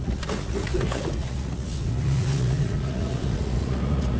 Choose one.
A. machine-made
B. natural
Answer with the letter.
A